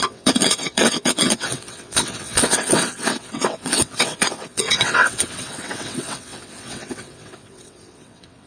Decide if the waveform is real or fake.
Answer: fake